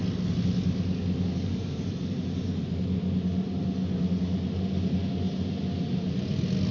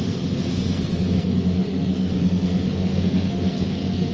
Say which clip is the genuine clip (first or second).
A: first